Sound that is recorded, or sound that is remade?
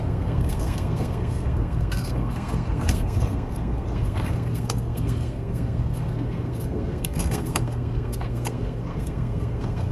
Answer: remade